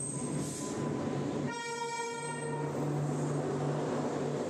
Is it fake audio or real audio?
real